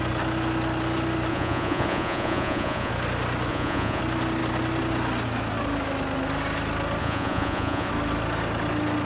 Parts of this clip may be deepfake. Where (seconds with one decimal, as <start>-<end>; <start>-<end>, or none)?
1.3-2.9; 3.5-4.0; 7.0-7.9